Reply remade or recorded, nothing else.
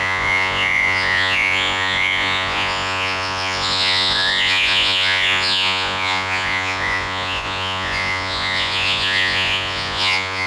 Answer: remade